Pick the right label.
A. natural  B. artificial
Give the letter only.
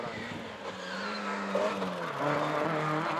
A